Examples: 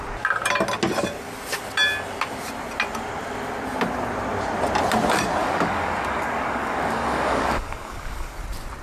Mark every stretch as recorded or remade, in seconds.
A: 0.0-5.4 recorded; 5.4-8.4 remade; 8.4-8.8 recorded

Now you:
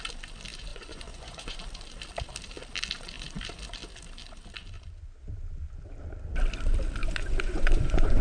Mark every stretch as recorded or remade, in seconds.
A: 0.0-0.7 recorded; 0.7-1.6 remade; 1.6-7.0 recorded; 7.0-8.2 remade